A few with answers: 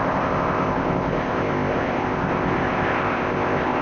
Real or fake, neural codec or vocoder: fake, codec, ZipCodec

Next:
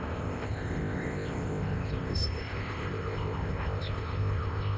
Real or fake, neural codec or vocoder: fake, codec, ZipCodec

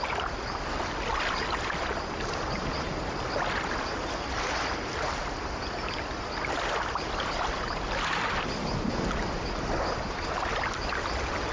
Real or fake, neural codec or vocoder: real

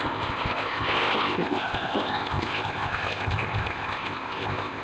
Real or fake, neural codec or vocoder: fake, codec, ZipCodec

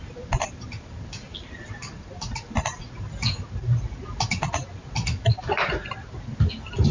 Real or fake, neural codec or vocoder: real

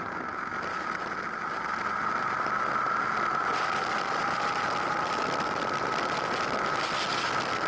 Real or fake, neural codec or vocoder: real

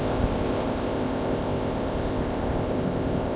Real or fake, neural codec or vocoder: fake, codec, ZipCodec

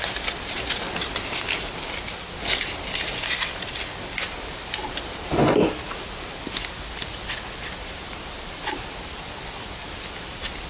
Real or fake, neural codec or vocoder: real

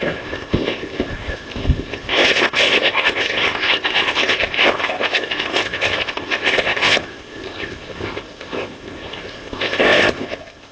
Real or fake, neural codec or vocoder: fake, codec, ZipCodec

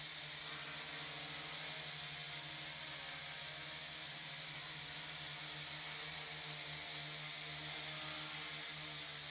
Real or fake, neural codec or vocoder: real